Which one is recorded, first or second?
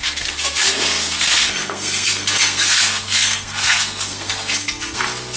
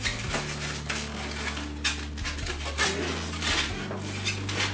second